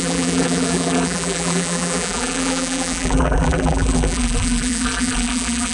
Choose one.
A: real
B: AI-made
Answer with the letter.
B